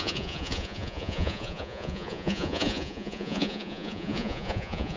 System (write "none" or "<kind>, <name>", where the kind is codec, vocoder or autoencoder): vocoder, Vocos